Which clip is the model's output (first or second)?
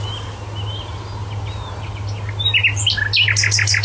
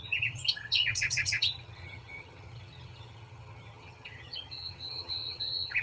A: second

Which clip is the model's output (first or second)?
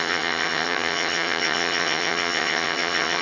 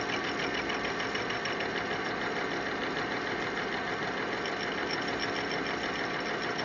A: first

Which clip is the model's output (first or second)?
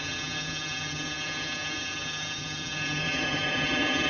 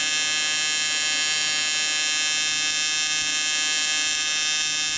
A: first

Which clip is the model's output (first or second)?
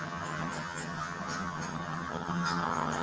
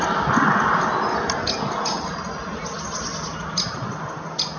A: first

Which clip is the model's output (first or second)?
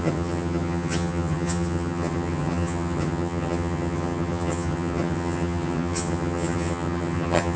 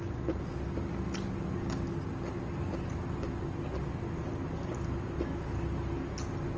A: first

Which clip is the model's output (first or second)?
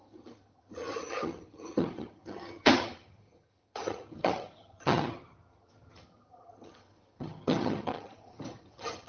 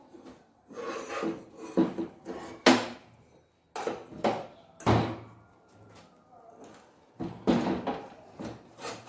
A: first